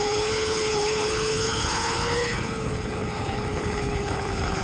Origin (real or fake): fake